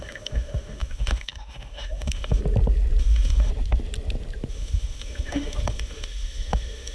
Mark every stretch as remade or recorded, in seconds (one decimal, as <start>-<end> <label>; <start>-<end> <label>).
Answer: 0.0-2.4 remade; 2.4-3.0 recorded; 3.0-3.5 remade; 3.5-4.5 recorded; 4.5-6.9 remade